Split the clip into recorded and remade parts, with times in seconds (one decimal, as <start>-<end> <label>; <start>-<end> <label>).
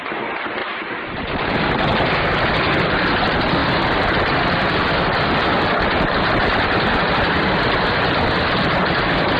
0.0-0.6 recorded; 0.6-1.7 remade; 1.7-9.4 recorded